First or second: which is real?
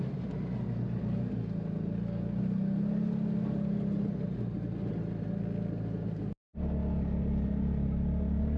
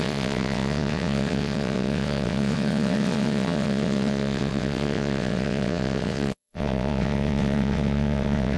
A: first